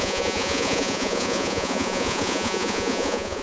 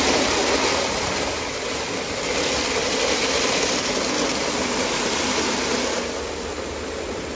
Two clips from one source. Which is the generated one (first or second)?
first